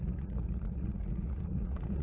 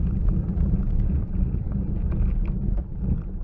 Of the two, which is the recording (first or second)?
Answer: second